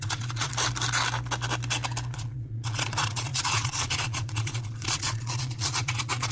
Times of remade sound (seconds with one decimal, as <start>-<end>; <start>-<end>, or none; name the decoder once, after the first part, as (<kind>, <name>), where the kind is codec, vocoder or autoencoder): 0.0-0.5 (vocoder, Vocos); 2.1-6.3